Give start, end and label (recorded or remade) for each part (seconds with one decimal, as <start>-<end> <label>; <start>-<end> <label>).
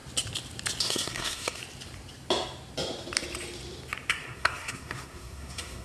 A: 0.0-0.8 recorded; 0.8-1.6 remade; 1.6-4.1 recorded; 4.1-5.8 remade